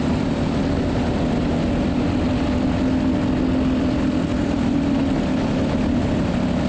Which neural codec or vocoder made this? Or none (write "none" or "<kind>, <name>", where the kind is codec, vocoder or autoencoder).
none